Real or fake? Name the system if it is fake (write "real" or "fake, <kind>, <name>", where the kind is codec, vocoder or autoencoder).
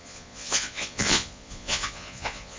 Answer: fake, vocoder, Vocos